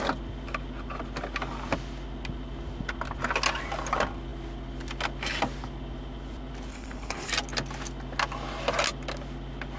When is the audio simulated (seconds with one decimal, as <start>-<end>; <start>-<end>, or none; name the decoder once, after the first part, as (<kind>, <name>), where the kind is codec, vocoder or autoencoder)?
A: 6.7-7.3 (codec, HILCodec)